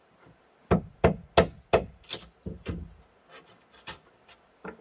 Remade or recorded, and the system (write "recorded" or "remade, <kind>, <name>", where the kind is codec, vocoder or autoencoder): recorded